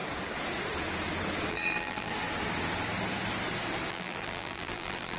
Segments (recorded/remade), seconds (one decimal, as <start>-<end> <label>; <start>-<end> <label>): 0.0-1.5 recorded; 1.5-2.1 remade; 2.1-3.9 recorded; 3.9-5.2 remade